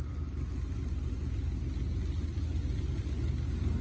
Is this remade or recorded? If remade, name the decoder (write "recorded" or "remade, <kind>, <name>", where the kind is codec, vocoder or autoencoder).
recorded